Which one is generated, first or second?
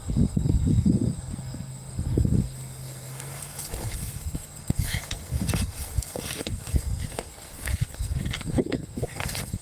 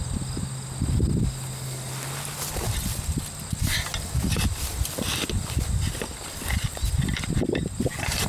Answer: first